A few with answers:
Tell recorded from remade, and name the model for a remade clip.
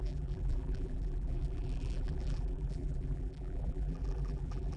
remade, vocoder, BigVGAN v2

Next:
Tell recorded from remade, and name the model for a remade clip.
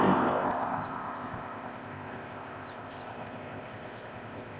remade, codec, ZipCodec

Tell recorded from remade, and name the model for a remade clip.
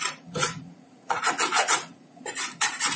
remade, vocoder, Vocos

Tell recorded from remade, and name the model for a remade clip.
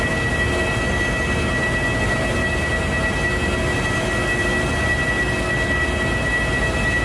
recorded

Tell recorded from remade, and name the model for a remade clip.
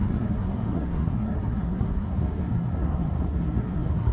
remade, codec, SNAC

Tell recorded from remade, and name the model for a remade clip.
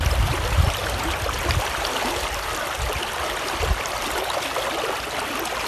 recorded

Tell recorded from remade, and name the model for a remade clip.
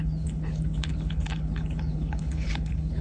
remade, codec, HILCodec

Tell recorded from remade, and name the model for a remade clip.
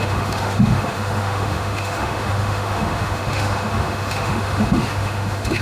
remade, autoencoder, DAC-VAE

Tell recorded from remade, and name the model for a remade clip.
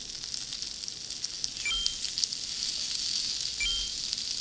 recorded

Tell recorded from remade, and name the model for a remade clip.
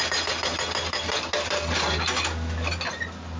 recorded